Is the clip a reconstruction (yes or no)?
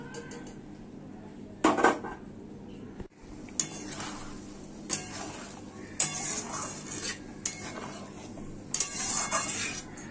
no